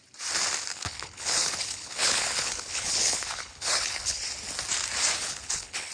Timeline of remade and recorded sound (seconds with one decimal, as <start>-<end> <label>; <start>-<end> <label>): 0.0-0.7 recorded; 0.7-4.2 remade; 4.2-5.2 recorded; 5.2-5.9 remade